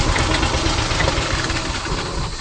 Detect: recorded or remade recorded